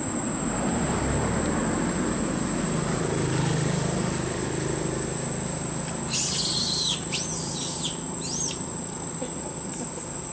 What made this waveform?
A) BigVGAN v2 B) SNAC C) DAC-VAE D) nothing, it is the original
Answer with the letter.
D